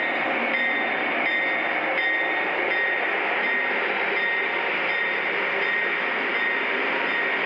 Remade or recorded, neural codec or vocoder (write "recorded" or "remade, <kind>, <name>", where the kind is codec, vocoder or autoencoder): recorded